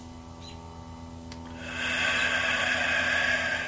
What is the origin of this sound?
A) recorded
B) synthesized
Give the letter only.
A